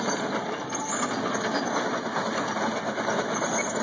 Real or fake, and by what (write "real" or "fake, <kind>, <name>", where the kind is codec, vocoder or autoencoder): real